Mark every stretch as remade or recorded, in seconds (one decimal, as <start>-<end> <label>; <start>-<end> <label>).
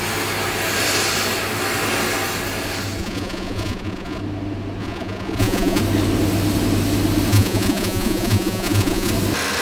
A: 0.0-3.0 recorded; 3.0-4.2 remade; 4.2-4.8 recorded; 4.8-5.8 remade; 5.8-7.3 recorded; 7.3-9.1 remade; 9.1-9.6 recorded